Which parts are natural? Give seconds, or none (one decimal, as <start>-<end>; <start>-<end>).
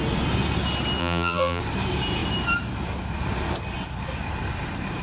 0.0-1.0; 1.6-5.0